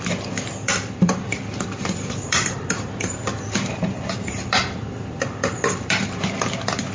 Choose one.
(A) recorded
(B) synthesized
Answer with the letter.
B